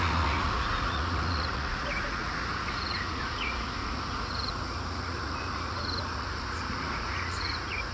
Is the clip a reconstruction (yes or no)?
yes